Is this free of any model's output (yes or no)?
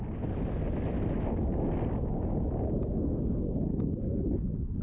yes